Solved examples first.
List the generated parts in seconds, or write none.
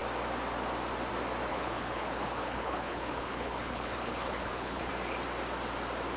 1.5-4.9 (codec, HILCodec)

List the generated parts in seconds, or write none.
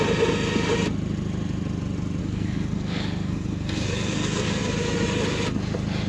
2.2-4.6 (codec, SNAC)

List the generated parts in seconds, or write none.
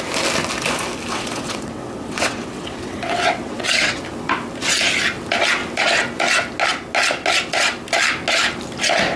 1.1-4.0 (vocoder, WaveNeXt)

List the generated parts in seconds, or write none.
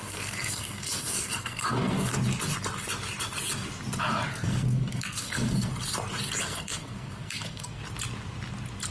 0.0-2.1 (codec, SNAC); 4.3-5.7; 6.4-7.8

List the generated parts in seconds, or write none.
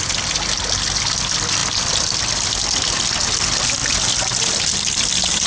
none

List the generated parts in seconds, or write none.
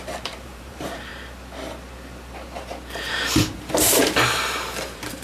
0.0-1.1 (vocoder, BigVGAN v2); 2.9-5.2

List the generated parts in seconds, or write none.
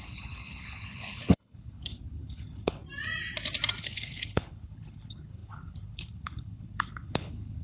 0.0-2.8 (codec, HILCodec); 3.8-7.6